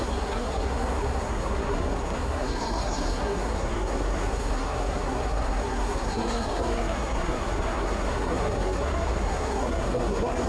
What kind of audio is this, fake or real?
fake